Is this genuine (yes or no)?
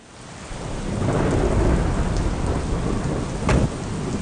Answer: yes